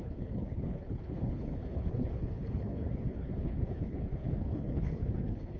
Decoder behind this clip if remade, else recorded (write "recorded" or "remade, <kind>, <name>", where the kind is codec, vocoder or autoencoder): remade, codec, HILCodec